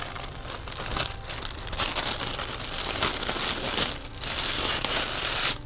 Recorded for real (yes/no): yes